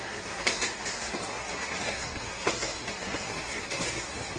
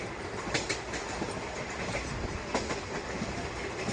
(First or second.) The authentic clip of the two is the second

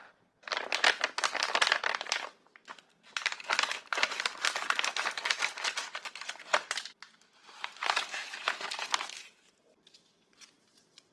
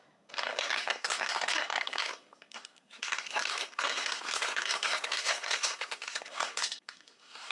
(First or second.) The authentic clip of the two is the first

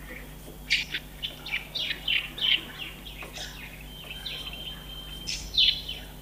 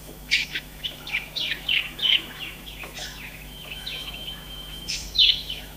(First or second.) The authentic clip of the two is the first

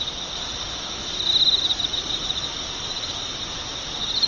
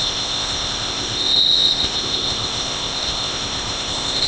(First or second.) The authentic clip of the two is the first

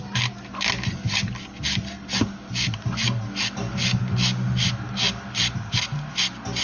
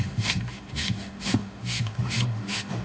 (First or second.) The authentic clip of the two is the first